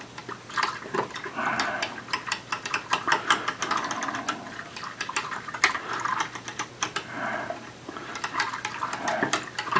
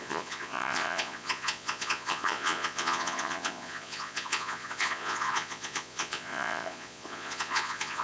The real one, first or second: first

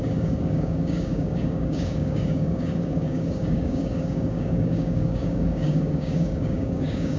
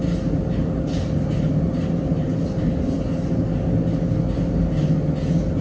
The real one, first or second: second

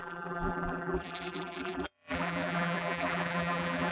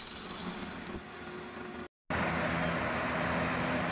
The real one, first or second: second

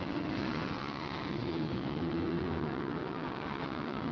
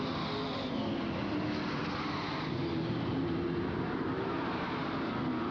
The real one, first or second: second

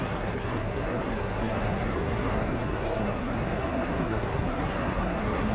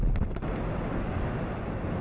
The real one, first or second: second